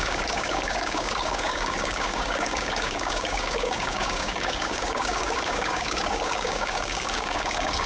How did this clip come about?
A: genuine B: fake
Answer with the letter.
B